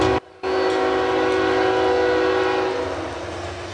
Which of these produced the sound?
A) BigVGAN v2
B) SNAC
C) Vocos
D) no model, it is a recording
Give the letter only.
D